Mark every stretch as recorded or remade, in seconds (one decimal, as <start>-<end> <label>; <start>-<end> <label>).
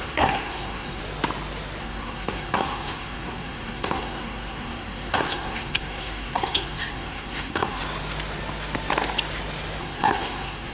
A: 0.0-1.0 remade; 1.0-1.8 recorded; 1.8-7.8 remade; 7.8-9.8 recorded; 9.8-10.7 remade